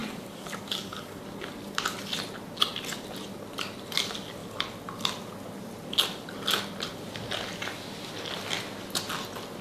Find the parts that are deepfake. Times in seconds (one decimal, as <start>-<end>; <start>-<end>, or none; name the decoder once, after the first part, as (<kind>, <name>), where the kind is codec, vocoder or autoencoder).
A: 0.0-1.2 (codec, DAC)